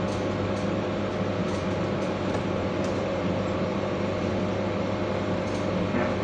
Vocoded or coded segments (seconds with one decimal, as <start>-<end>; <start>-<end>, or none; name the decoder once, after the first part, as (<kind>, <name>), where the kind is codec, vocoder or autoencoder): 1.4-4.4 (vocoder, BigVGAN v2)